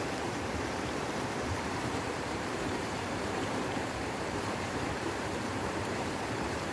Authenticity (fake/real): fake